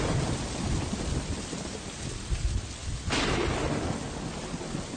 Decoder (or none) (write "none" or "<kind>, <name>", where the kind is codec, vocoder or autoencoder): none